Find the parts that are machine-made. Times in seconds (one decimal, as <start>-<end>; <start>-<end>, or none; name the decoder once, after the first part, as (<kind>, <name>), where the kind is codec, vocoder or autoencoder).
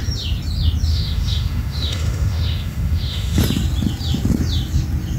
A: 0.9-3.4 (autoencoder, DAC-VAE)